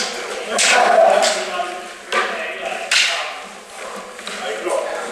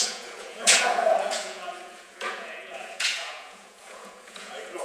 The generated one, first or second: second